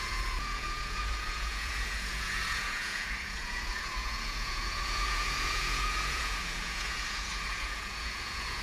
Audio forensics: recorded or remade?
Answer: remade